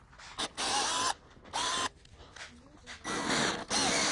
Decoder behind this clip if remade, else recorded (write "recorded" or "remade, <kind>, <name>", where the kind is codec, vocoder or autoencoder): recorded